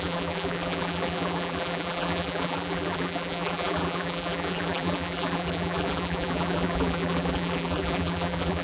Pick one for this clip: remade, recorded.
remade